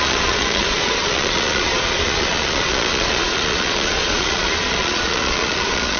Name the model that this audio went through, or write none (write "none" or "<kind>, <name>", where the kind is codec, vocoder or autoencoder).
vocoder, Vocos